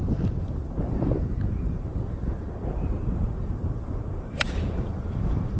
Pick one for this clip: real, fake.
fake